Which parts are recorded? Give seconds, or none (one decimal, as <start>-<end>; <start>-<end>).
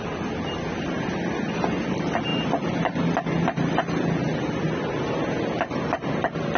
0.0-6.6